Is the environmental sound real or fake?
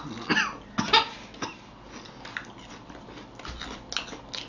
real